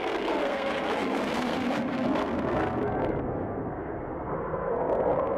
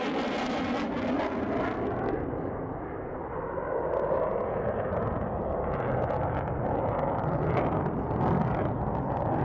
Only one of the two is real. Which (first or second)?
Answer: second